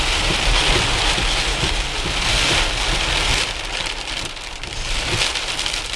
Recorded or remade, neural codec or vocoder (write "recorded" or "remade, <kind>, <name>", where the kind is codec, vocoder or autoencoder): remade, vocoder, BigVGAN v2